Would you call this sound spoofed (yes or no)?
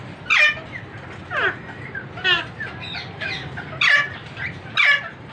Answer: no